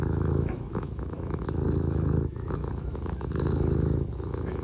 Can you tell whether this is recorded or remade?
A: remade